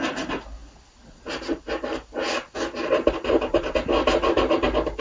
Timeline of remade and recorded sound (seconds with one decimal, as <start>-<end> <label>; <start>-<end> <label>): 0.0-5.0 recorded